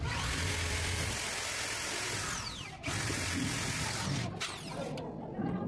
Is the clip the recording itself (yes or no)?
yes